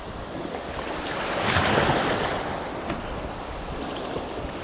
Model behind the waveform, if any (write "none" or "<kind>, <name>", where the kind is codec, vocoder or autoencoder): none